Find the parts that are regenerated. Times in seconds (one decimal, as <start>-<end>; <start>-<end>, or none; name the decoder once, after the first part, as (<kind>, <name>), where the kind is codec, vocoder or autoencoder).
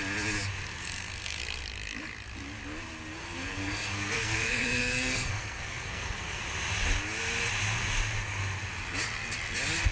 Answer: 0.8-1.4 (codec, SNAC); 3.2-6.4